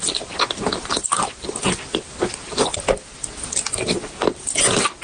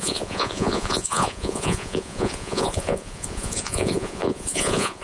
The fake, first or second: second